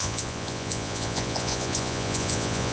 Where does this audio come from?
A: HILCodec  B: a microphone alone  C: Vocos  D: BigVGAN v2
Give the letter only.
C